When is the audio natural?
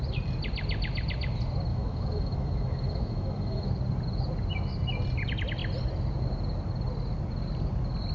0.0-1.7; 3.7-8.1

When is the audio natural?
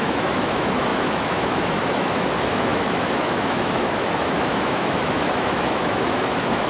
none